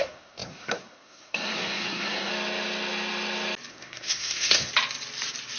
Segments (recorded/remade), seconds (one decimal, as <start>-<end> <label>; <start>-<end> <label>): 0.0-2.3 remade; 2.3-3.7 recorded; 3.7-4.7 remade; 4.7-5.6 recorded